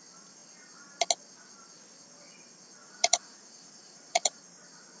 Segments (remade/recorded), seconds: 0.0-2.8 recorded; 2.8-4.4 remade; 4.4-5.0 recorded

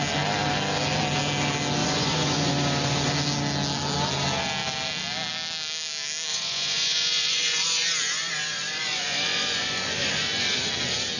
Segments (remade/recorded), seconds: 0.0-1.8 recorded; 1.8-2.5 remade; 2.5-6.3 recorded; 6.3-10.7 remade; 10.7-11.2 recorded

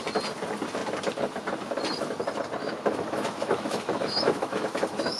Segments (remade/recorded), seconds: 0.0-2.6 recorded; 2.6-5.2 remade

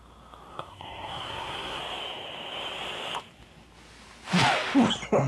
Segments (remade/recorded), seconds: 0.0-0.5 recorded; 0.5-1.8 remade; 1.8-5.3 recorded